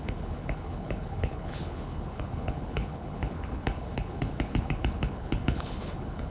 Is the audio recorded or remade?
remade